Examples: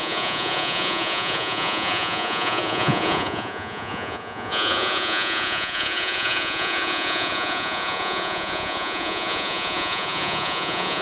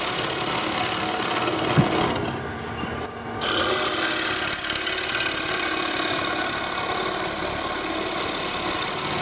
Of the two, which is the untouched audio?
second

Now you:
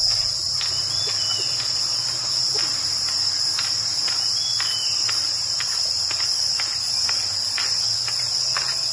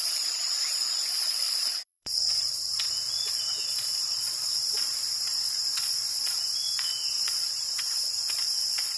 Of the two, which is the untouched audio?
first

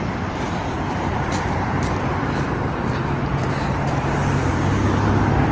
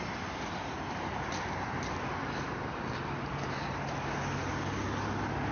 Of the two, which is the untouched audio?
second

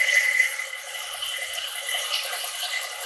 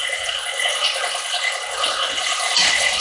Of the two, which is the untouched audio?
second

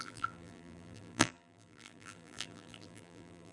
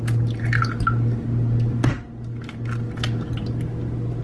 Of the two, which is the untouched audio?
second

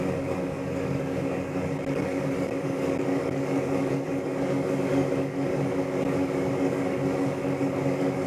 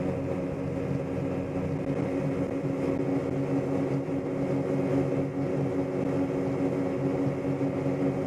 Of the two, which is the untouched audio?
second